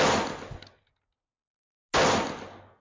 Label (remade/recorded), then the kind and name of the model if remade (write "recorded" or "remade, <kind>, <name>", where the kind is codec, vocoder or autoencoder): recorded